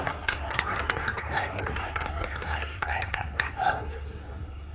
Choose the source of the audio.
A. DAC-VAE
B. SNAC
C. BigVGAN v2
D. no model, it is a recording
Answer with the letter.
B